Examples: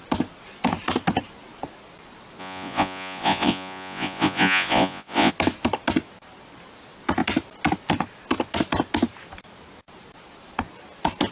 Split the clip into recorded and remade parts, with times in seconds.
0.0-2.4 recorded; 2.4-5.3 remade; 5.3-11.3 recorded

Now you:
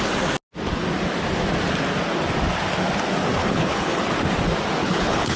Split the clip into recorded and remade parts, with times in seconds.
0.0-3.4 recorded; 3.4-4.0 remade; 4.0-4.8 recorded; 4.8-5.4 remade